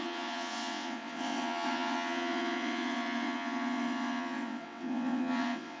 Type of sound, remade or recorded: remade